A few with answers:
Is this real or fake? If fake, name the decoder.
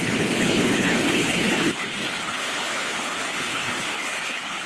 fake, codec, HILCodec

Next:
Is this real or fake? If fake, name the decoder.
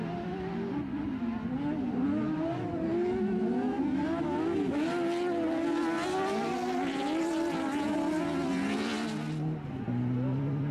real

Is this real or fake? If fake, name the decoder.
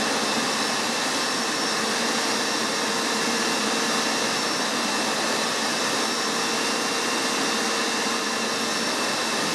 real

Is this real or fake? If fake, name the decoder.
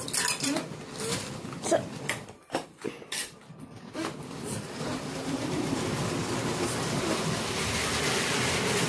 fake, vocoder, BigVGAN v2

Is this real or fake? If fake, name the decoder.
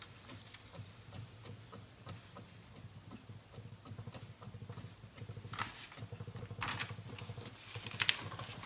real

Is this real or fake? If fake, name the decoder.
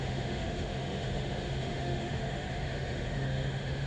fake, autoencoder, DAC-VAE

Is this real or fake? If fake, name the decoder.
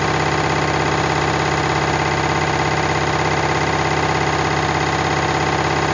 real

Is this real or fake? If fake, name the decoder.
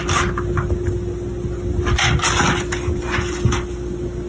real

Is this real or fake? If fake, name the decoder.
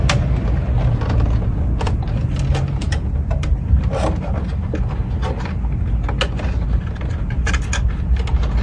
real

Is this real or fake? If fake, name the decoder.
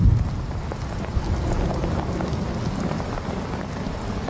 real